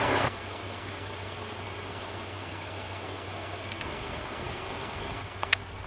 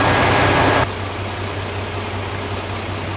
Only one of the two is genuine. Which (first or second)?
second